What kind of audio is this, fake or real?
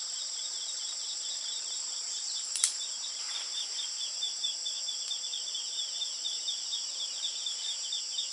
fake